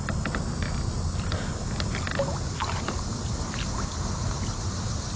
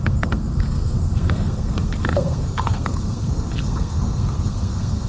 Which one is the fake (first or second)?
second